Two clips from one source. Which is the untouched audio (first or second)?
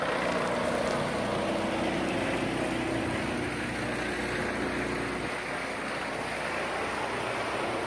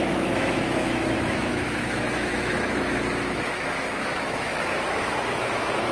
first